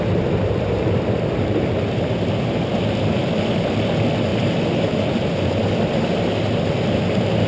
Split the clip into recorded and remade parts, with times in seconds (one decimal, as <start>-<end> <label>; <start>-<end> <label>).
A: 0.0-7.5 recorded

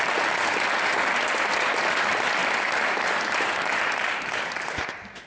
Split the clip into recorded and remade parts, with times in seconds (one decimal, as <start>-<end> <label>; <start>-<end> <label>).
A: 0.0-5.3 recorded

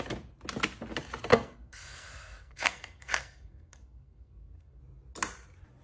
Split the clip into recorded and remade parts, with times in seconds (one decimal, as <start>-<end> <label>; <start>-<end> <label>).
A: 0.0-1.3 recorded; 1.3-4.8 remade; 4.8-5.8 recorded